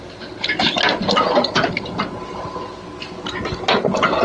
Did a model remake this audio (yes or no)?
no